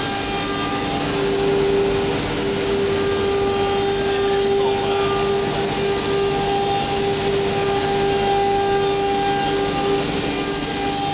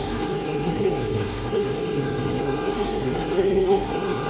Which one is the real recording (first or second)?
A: first